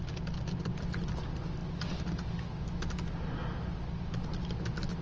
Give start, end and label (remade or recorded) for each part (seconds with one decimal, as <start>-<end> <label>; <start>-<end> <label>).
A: 0.0-5.0 recorded

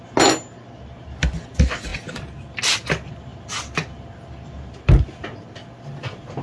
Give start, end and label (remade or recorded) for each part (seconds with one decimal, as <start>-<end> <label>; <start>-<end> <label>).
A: 0.0-6.4 recorded

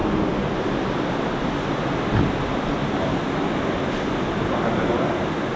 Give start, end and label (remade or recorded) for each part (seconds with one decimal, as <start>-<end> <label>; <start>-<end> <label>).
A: 0.0-5.6 recorded

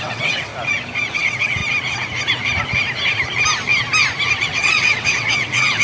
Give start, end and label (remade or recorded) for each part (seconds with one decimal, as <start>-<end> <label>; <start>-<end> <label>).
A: 0.0-0.5 remade; 0.5-1.1 recorded; 1.1-1.6 remade; 1.6-4.4 recorded; 4.4-5.8 remade

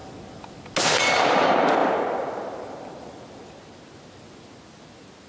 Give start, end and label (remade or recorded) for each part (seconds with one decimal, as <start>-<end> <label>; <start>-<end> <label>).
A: 0.0-5.3 recorded